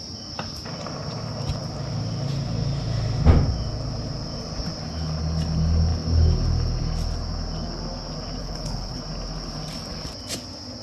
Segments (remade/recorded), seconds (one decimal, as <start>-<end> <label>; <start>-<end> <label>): 0.0-8.4 recorded; 8.4-9.0 remade; 9.0-10.8 recorded